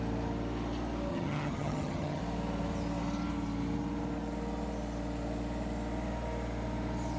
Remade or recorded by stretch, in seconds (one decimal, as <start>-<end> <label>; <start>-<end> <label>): 0.0-1.1 recorded; 1.1-2.2 remade; 2.2-7.2 recorded